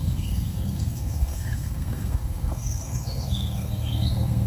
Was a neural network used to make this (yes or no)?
yes